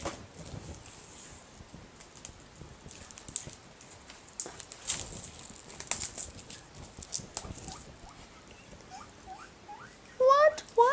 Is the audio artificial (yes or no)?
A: no